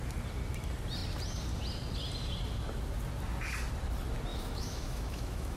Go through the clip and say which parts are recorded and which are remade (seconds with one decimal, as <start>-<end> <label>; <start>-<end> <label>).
0.0-4.3 recorded; 4.3-5.6 remade